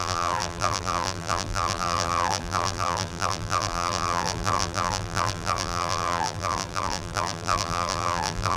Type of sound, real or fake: fake